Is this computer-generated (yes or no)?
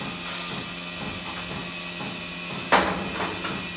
no